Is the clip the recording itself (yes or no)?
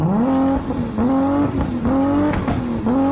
yes